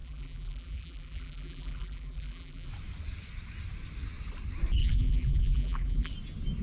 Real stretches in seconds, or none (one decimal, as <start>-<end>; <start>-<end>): 2.7-4.8; 6.1-6.6